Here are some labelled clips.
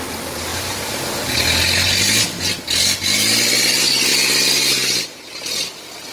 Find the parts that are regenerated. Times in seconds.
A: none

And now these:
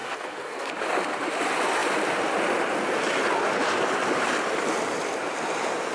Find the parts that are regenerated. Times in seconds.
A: 0.0-0.7 (codec, SNAC)

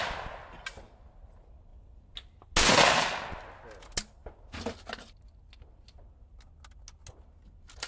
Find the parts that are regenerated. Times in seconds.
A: none

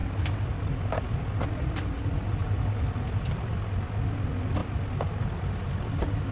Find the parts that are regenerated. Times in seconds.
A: none

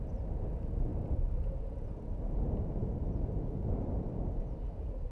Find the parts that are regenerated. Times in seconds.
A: none

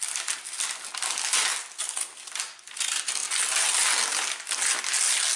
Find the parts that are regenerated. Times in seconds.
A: none